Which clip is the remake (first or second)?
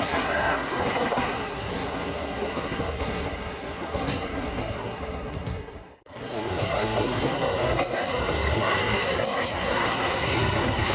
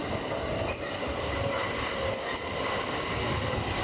first